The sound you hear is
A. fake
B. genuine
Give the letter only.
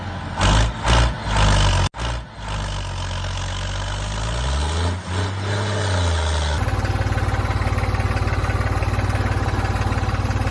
B